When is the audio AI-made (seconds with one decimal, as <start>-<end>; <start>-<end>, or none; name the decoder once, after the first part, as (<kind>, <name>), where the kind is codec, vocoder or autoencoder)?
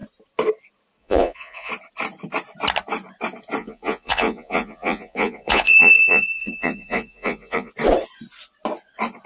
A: 1.0-1.7 (vocoder, Vocos); 3.6-7.7